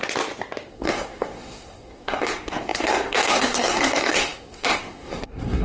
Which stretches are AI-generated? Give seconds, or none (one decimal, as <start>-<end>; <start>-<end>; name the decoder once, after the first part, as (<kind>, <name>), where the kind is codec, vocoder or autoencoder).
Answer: 0.7-5.6 (codec, SNAC)